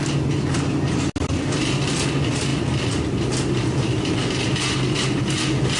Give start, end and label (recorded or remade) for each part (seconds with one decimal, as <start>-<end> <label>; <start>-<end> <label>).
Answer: 0.0-5.8 recorded